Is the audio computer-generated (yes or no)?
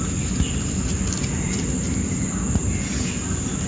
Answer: no